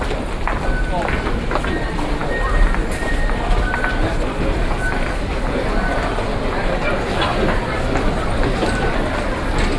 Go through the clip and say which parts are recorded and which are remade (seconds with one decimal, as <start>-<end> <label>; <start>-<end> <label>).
0.0-7.3 recorded; 7.3-8.8 remade; 8.8-9.8 recorded